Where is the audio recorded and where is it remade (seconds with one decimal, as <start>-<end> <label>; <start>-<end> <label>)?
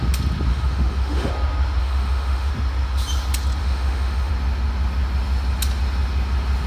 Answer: 0.0-0.5 recorded; 0.5-1.3 remade; 1.3-1.8 recorded; 1.8-2.5 remade; 2.5-3.6 recorded; 3.6-4.3 remade; 4.3-6.7 recorded